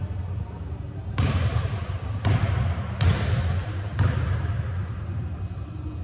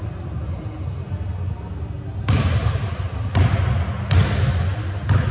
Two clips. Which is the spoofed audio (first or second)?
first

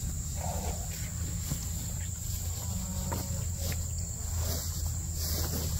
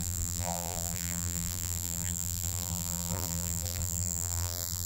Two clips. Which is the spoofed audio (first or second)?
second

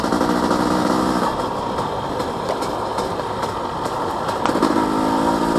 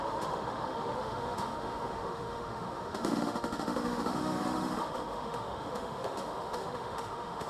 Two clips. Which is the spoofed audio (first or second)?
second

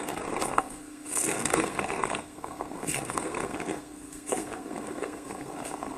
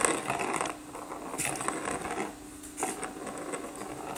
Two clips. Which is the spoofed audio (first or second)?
first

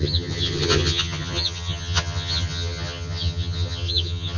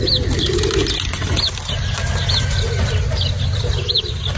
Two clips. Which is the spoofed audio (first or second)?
first